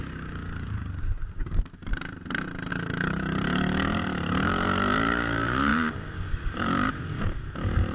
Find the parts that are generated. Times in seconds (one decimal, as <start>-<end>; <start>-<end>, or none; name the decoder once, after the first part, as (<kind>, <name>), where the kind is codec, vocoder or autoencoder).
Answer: 0.0-1.9 (codec, DAC); 2.7-7.9